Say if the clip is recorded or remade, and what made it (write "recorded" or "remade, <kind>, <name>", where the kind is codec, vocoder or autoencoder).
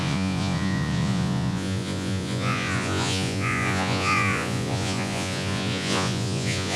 remade, vocoder, Vocos